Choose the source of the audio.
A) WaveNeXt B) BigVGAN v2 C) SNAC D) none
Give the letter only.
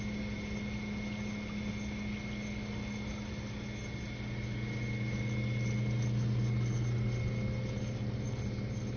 D